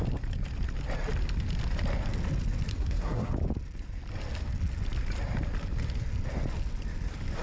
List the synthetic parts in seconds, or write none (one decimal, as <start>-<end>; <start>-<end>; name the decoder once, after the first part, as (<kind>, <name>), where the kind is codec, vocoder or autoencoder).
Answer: 2.7-3.3 (codec, SNAC)